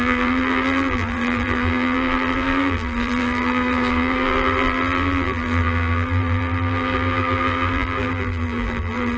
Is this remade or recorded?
remade